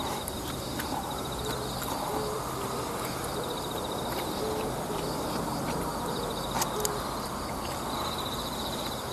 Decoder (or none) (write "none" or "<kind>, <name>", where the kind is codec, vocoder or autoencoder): none